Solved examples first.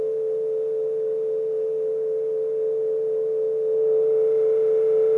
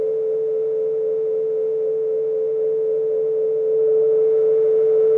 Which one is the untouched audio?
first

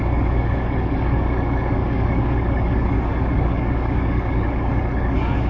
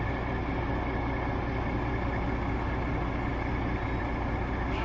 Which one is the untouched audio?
second